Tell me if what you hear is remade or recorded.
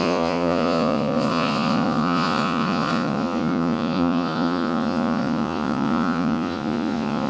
remade